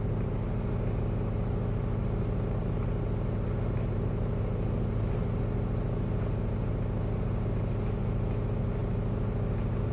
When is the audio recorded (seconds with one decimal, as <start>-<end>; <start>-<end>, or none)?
0.0-9.9